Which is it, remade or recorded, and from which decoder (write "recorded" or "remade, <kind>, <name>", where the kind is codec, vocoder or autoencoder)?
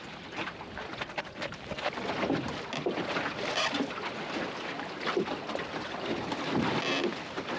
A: recorded